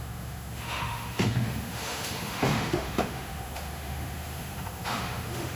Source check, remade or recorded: remade